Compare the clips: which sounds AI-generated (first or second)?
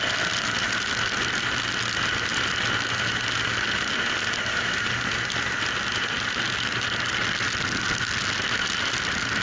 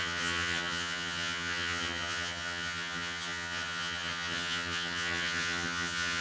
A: second